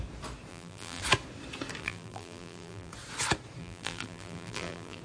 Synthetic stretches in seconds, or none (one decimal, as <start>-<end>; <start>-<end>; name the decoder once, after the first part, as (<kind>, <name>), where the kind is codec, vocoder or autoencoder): 0.5-1.0 (vocoder, BigVGAN v2); 1.8-2.9; 3.6-5.0